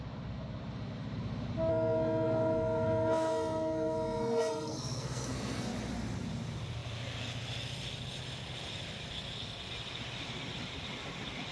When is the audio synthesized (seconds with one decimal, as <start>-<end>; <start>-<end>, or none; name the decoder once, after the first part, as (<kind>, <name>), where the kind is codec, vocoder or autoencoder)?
1.7-5.7 (codec, SNAC)